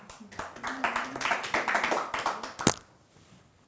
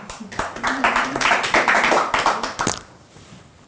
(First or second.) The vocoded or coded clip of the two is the second